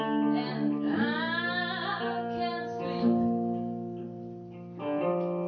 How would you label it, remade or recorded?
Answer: recorded